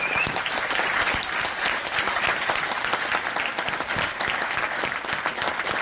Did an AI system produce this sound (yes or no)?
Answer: no